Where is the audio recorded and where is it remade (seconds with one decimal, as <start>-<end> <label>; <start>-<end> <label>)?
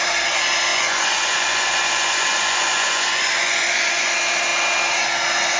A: 0.0-0.7 recorded; 0.7-4.1 remade; 4.1-5.6 recorded